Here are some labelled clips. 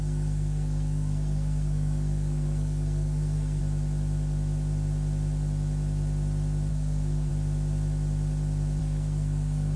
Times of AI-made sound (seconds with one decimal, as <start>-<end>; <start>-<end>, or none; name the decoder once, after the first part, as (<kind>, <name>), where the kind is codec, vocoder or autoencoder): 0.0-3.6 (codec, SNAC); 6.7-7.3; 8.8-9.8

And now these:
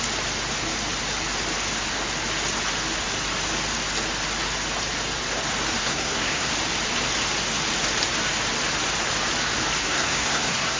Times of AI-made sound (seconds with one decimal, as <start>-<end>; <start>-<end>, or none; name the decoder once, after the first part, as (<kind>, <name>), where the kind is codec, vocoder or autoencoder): 5.8-6.5 (codec, SNAC); 9.8-10.8

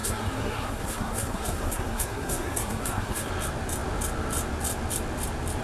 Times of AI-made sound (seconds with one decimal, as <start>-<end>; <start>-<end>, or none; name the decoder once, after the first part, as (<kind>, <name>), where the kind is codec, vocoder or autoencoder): 0.0-3.3 (codec, SNAC)